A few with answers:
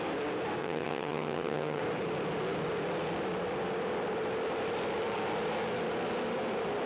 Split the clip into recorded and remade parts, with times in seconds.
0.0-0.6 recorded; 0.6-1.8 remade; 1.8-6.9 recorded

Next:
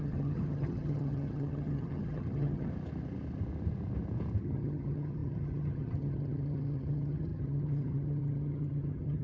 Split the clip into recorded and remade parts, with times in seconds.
0.0-2.7 remade; 2.7-4.4 recorded; 4.4-9.2 remade

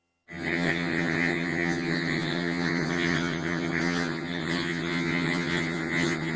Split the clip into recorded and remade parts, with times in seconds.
0.0-6.4 remade

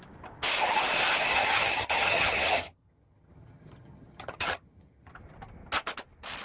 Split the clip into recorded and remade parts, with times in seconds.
0.0-1.3 recorded; 1.3-5.1 remade; 5.1-6.4 recorded

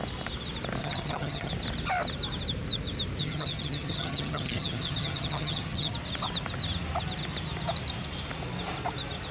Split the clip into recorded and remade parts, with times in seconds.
0.0-0.8 recorded; 0.8-1.5 remade; 1.5-3.2 recorded; 3.2-5.9 remade; 5.9-9.3 recorded

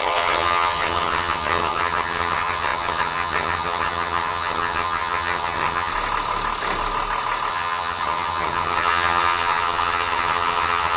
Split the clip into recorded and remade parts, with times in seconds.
0.0-5.9 remade; 5.9-7.5 recorded; 7.5-11.0 remade

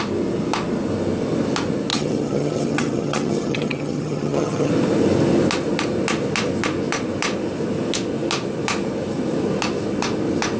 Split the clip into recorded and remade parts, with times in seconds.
0.0-1.9 recorded; 1.9-4.7 remade; 4.7-10.6 recorded

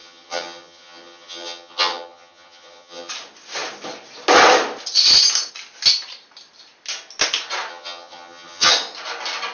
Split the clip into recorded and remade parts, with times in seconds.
0.0-3.1 remade; 3.1-7.7 recorded; 7.7-8.7 remade; 8.7-9.5 recorded